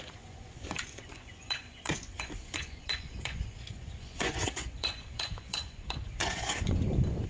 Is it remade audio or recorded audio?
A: remade